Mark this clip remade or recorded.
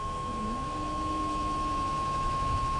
remade